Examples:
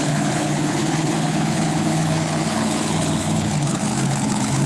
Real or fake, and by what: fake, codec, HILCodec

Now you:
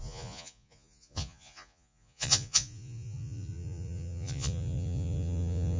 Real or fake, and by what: fake, vocoder, Vocos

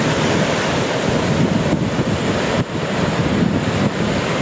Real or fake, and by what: real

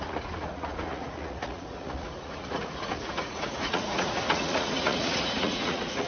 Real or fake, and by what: fake, vocoder, Vocos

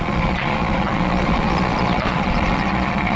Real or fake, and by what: fake, vocoder, Vocos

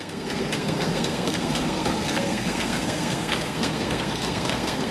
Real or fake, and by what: fake, codec, SNAC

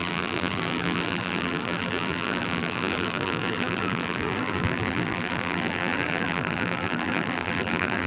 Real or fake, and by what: fake, vocoder, BigVGAN v2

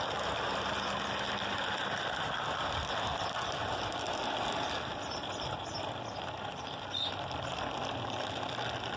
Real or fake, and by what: real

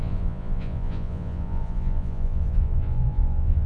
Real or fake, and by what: fake, vocoder, Vocos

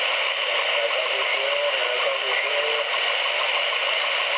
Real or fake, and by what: real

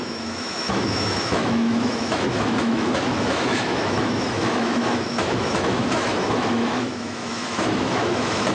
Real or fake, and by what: fake, autoencoder, DAC-VAE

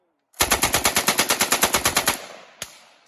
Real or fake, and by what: real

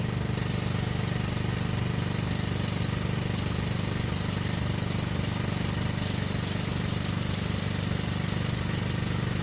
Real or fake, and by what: real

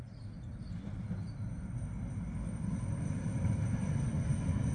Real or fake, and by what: real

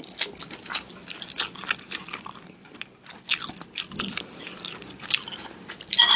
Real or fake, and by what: real